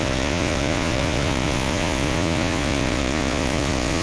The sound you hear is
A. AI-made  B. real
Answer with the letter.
A